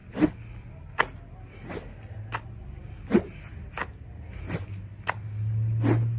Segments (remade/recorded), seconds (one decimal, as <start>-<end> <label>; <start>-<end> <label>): 0.0-6.2 recorded